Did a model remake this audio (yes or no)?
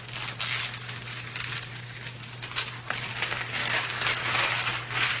no